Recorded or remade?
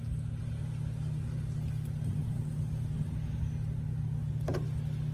recorded